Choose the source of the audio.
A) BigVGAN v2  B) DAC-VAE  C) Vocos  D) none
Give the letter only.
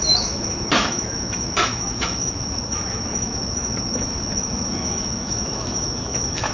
B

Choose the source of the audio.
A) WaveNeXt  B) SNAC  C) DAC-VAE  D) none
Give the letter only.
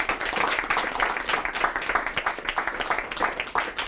D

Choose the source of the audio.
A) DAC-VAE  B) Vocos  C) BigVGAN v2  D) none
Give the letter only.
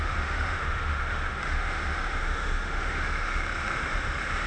A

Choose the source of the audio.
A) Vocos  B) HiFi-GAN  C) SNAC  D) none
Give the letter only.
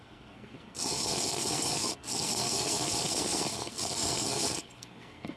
C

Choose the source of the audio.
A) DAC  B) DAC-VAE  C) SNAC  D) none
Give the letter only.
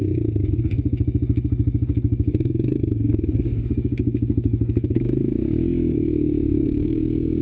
A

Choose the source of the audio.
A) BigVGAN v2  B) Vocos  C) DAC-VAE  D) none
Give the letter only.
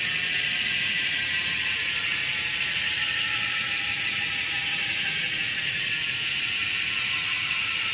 B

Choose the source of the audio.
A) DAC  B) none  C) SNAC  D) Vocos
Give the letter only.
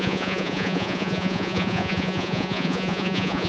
D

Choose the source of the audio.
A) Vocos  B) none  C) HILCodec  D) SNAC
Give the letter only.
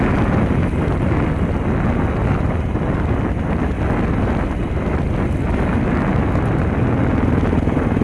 B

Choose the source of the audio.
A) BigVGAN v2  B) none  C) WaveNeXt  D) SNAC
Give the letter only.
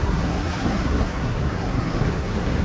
D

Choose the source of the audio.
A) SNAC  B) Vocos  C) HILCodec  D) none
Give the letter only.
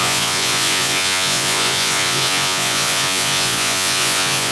B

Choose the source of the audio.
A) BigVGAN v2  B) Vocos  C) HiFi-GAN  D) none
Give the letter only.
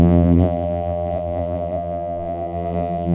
A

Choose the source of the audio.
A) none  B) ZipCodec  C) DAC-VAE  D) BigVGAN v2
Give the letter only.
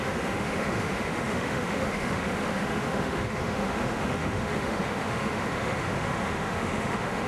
C